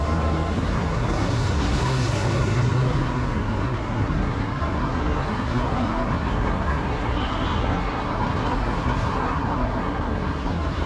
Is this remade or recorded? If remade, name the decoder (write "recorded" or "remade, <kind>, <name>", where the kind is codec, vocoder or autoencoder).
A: remade, codec, SNAC